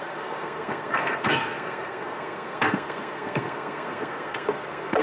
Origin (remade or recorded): remade